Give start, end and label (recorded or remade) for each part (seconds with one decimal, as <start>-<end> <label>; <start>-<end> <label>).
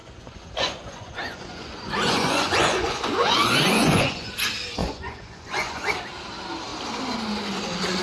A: 0.0-4.3 remade; 4.3-4.8 recorded; 4.8-5.9 remade; 5.9-8.0 recorded